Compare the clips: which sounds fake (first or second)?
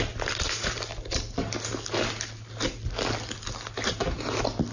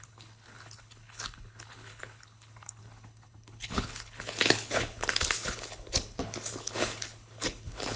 second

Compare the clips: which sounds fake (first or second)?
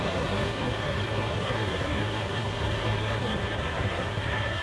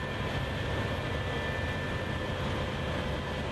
first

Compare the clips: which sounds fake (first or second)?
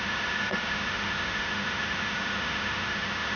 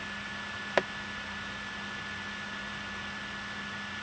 first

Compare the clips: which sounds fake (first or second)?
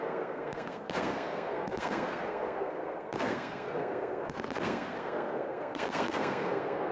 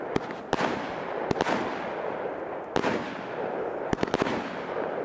first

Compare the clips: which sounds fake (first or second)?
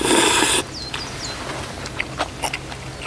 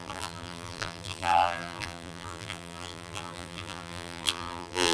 second